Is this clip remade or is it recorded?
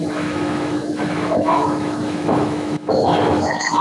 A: remade